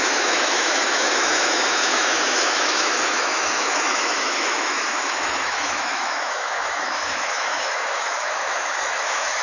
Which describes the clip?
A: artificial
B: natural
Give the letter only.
A